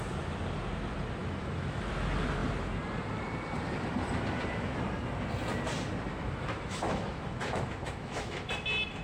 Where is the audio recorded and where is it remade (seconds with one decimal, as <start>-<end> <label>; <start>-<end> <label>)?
0.0-1.2 recorded; 1.2-1.8 remade; 1.8-6.1 recorded; 6.1-8.5 remade; 8.5-9.0 recorded